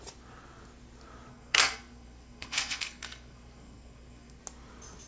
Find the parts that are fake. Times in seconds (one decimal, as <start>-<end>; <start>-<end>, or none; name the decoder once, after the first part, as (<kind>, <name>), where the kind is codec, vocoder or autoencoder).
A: 1.3-4.4 (codec, SNAC)